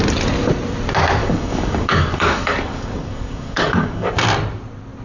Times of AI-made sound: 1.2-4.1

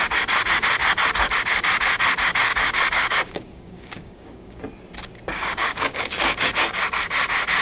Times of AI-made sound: 2.5-4.6; 5.3-6.1

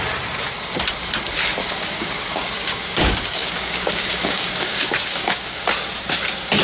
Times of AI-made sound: 1.6-5.6

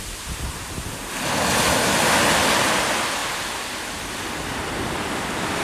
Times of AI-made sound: none